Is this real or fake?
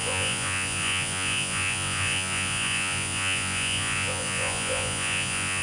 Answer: fake